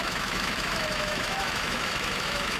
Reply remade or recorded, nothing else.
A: remade